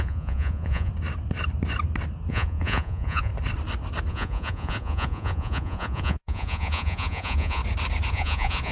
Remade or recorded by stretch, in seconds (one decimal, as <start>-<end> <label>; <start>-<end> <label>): 0.0-0.9 remade; 0.9-2.3 recorded; 2.3-3.3 remade; 3.3-4.1 recorded; 4.1-7.6 remade; 7.6-8.1 recorded; 8.1-8.7 remade